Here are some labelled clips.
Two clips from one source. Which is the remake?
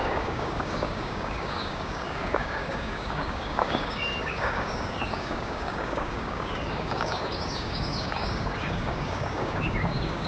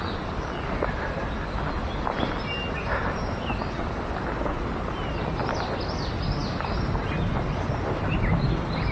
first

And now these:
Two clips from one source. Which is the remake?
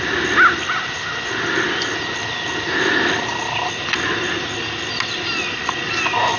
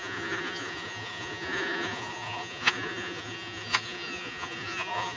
second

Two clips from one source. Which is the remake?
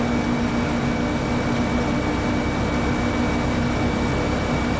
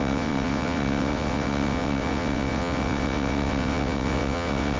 second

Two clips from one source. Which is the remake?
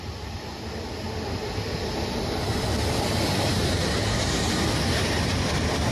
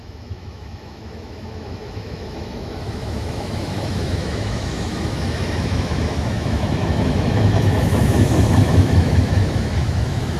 second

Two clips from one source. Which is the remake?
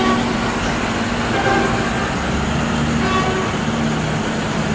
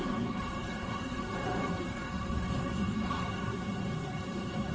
second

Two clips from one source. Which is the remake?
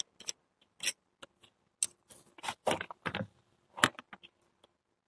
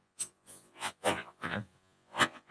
second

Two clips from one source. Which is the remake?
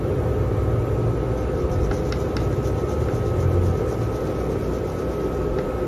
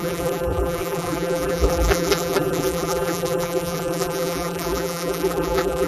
second